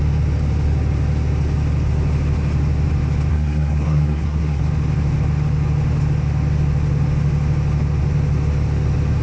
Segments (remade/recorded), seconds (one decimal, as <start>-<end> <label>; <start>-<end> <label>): 0.0-3.3 recorded; 3.3-4.6 remade; 4.6-9.2 recorded